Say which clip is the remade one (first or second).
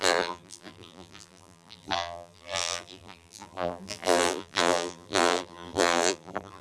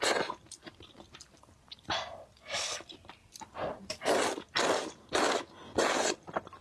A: first